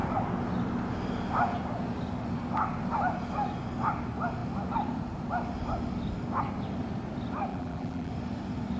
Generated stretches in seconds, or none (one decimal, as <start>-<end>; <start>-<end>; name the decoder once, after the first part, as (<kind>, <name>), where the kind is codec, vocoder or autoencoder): 7.5-8.1 (vocoder, BigVGAN v2)